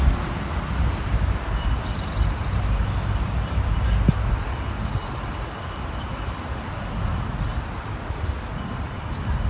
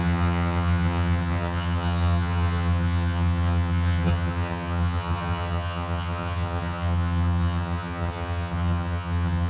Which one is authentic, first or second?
first